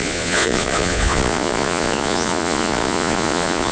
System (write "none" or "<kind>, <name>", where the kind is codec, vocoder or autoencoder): vocoder, Vocos